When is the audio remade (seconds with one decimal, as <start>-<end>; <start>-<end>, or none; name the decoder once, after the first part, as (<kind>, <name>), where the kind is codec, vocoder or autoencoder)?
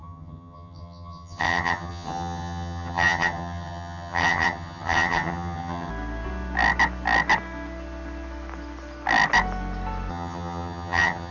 0.0-5.9 (vocoder, HiFi-GAN); 10.1-11.3